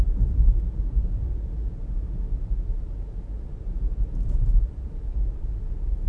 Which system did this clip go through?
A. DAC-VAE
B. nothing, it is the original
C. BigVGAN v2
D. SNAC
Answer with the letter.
C